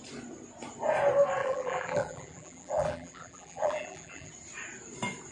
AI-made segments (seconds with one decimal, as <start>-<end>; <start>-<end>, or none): 1.4-4.3